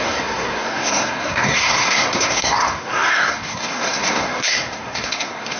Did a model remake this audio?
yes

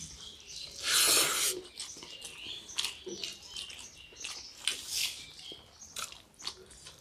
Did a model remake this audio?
no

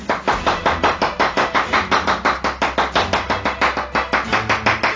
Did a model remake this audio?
no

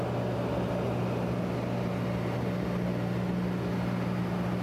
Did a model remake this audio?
no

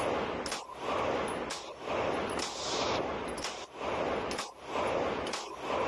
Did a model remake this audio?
no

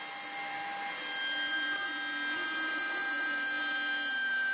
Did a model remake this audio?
no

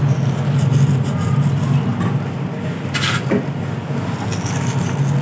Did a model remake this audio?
no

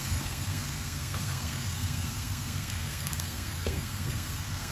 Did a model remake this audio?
yes